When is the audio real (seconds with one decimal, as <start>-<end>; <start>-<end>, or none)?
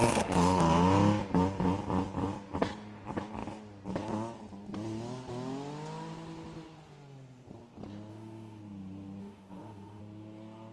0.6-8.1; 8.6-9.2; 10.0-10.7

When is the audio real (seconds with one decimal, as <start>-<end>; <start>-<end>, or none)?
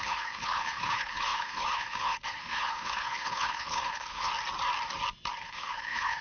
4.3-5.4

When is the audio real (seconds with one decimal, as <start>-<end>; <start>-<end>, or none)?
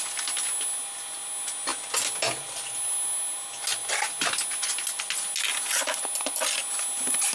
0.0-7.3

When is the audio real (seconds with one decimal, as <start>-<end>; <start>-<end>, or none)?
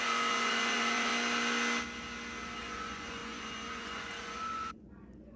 1.1-2.6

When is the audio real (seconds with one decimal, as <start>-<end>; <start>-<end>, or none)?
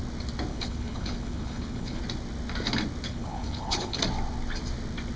0.0-0.5; 2.0-3.1; 4.0-5.2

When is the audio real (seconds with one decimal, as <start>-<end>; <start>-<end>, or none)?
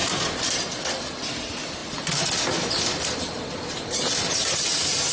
0.0-5.1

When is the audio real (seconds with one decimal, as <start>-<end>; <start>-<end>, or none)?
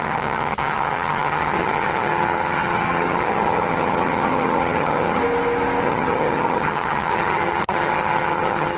5.2-5.8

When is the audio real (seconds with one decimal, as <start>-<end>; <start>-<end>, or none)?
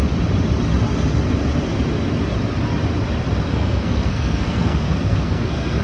0.0-3.5